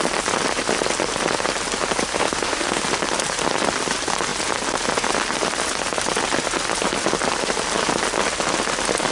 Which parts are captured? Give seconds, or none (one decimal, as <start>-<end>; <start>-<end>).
0.0-2.1; 2.8-9.1

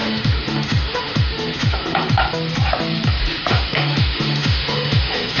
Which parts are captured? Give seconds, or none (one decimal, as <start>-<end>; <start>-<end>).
2.2-3.2

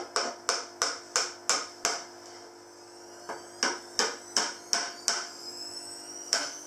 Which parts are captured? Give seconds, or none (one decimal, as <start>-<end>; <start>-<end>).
0.0-5.4